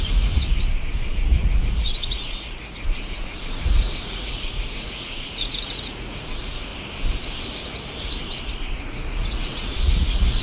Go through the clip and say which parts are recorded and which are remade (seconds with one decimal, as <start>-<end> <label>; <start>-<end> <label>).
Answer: 0.0-6.7 remade; 6.7-8.5 recorded; 8.5-10.4 remade